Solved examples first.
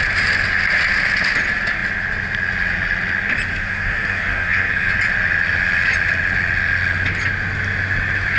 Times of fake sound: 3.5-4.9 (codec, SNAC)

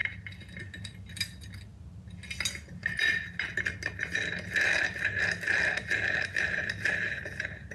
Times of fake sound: none

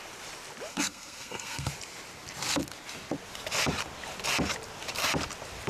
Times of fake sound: 0.7-1.7 (codec, SNAC)

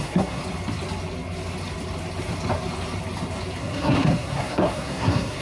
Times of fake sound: 0.0-0.4 (codec, SNAC); 3.6-5.4

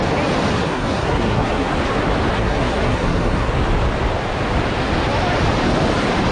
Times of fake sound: 0.5-1.7 (codec, SNAC); 2.3-3.5

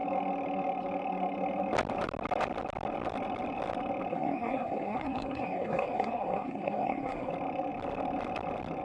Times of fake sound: 4.1-7.3 (codec, SNAC)

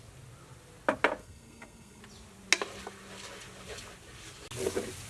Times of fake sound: 1.2-2.0 (codec, SNAC)